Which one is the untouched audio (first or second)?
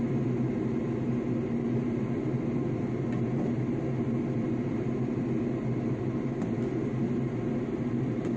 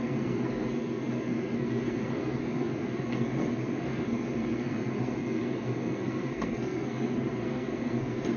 first